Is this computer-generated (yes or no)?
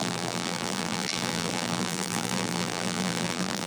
yes